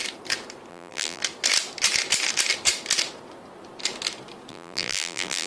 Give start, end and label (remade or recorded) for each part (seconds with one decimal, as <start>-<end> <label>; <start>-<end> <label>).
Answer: 0.0-0.7 recorded; 0.7-1.2 remade; 1.2-4.5 recorded; 4.5-5.5 remade